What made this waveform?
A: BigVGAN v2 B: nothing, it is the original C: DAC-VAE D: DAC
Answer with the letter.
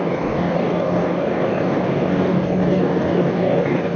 D